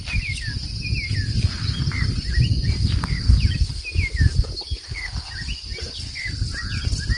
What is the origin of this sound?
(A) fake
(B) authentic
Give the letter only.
B